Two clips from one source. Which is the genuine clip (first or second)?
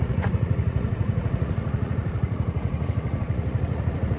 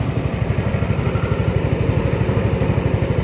second